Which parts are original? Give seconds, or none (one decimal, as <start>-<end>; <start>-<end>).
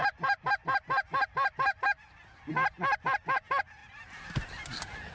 2.5-3.8; 4.5-5.1